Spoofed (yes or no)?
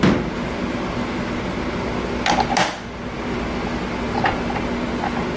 no